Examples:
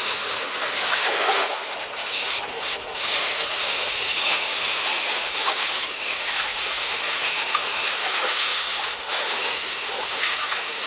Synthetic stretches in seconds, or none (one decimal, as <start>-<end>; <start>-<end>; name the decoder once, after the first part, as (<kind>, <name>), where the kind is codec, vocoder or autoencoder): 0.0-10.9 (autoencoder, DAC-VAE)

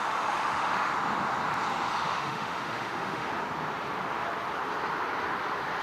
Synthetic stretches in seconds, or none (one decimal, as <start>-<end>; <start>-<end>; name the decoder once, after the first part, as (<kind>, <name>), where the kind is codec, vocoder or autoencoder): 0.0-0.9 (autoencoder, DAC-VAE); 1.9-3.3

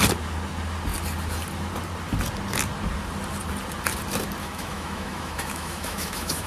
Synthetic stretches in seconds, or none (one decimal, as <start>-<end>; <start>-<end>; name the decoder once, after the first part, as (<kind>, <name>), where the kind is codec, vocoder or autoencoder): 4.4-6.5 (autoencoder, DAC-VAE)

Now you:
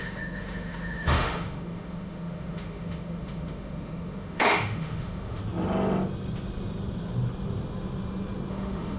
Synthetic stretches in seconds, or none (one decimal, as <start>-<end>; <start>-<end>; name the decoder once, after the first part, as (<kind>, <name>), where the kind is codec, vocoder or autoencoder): 0.0-5.4 (autoencoder, DAC-VAE); 8.5-9.0

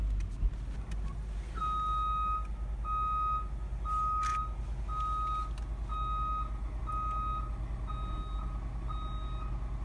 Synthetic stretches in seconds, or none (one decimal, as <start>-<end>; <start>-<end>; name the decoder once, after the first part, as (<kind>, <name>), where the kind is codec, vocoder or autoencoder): none

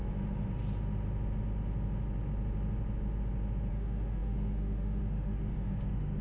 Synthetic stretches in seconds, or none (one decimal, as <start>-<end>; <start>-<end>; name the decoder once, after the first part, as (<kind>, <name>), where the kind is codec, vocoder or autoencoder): 3.7-6.2 (autoencoder, DAC-VAE)

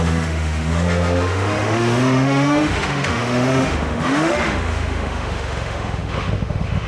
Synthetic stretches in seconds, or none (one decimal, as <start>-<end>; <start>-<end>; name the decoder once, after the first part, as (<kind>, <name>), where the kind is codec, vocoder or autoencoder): 0.0-6.9 (autoencoder, DAC-VAE)

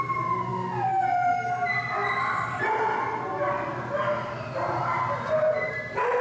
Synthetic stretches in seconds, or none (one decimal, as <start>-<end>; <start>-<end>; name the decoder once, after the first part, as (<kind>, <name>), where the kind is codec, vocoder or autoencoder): none